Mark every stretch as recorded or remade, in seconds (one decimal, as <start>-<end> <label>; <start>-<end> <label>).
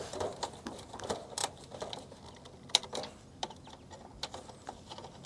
0.0-5.3 recorded